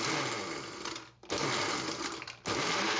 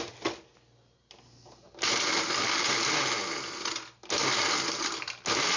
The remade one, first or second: first